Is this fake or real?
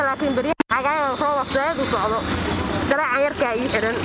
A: real